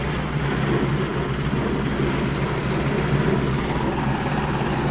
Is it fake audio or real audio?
real